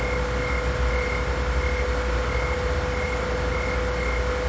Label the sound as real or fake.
real